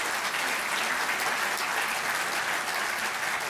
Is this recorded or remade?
recorded